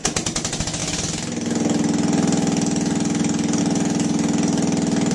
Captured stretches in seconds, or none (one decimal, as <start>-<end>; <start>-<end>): 0.0-5.1